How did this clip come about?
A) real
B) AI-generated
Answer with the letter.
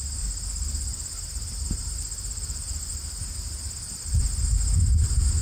A